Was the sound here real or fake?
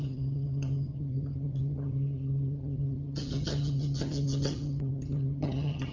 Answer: fake